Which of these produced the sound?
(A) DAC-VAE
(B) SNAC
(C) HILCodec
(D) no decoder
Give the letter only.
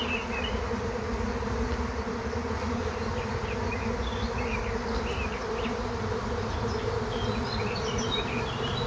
D